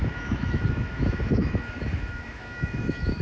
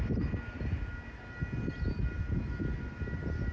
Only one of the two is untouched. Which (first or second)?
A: second